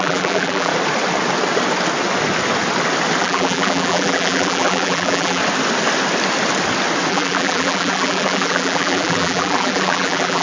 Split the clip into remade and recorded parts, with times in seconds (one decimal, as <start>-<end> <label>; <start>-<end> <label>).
0.0-0.7 remade; 0.7-3.2 recorded; 3.2-5.4 remade; 5.4-7.1 recorded; 7.1-10.4 remade

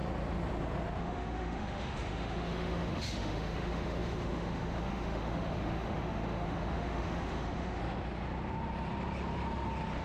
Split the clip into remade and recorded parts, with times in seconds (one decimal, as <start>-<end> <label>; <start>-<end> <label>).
0.0-1.0 recorded; 1.0-7.8 remade; 7.8-10.0 recorded

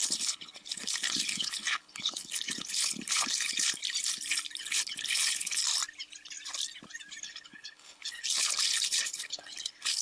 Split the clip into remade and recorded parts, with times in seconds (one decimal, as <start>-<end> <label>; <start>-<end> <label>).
0.0-3.8 remade; 3.8-4.6 recorded; 4.6-5.6 remade; 5.6-7.2 recorded; 7.2-10.0 remade

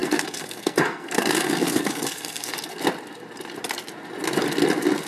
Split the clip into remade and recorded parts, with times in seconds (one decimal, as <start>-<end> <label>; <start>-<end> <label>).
0.0-2.8 remade; 2.8-5.1 recorded

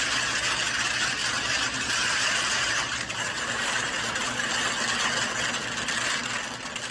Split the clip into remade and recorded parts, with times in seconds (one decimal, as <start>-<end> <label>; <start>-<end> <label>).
0.0-1.2 recorded; 1.2-4.6 remade; 4.6-6.9 recorded

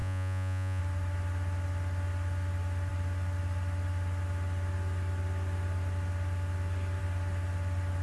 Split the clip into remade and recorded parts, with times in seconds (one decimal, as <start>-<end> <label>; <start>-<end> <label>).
0.0-0.8 remade; 0.8-8.0 recorded

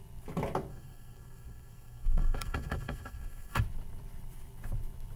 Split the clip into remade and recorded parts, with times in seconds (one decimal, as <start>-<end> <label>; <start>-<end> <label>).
0.0-0.7 recorded; 0.7-3.6 remade; 3.6-5.2 recorded